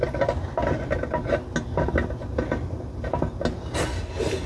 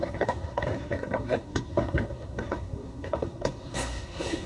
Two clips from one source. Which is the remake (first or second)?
second